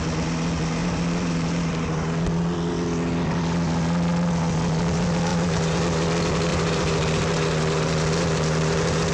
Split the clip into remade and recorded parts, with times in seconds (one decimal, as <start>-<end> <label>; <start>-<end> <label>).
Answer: 0.0-0.8 recorded; 0.8-2.4 remade; 2.4-5.3 recorded; 5.3-5.8 remade; 5.8-6.5 recorded; 6.5-9.1 remade